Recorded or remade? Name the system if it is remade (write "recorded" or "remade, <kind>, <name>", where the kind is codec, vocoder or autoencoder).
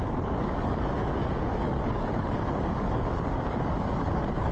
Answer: remade, codec, DAC